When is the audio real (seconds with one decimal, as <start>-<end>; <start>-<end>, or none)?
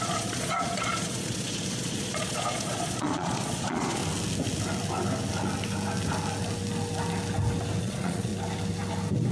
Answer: 4.0-7.8; 8.3-9.3